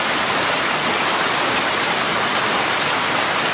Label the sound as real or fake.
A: fake